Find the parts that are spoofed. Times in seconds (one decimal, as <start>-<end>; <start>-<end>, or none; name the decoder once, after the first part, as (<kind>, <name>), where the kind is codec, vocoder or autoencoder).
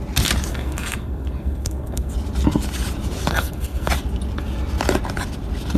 0.5-2.1 (codec, SNAC); 3.3-3.9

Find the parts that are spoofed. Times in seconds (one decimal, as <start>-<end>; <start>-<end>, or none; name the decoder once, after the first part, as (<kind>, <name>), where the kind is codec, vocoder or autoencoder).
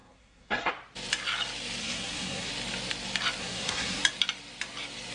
0.0-0.7 (codec, SNAC); 1.8-2.5; 3.4-4.0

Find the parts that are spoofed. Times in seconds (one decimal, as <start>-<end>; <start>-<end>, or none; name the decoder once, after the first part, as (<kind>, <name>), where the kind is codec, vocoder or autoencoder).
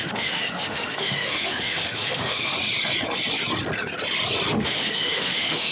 0.0-2.5 (autoencoder, DAC-VAE); 4.5-5.7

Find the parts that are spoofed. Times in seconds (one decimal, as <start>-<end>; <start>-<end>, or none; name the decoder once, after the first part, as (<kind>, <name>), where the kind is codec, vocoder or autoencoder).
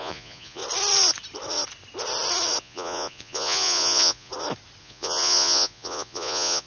0.0-0.6 (vocoder, Vocos); 2.6-4.3; 4.8-6.7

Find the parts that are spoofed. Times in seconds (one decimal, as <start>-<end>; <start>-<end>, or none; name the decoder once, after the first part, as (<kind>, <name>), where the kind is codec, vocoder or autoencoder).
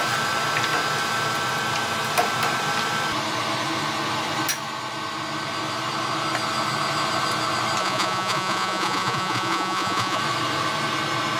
7.8-10.2 (vocoder, Vocos)